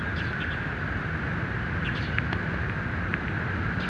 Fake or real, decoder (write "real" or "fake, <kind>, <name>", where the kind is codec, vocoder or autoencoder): real